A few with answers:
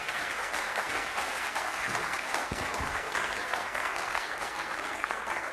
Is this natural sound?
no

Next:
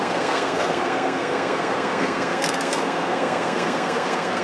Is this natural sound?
no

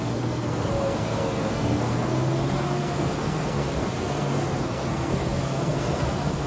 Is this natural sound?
no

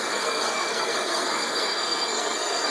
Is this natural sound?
no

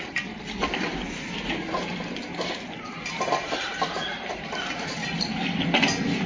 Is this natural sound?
yes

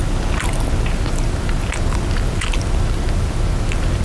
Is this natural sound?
yes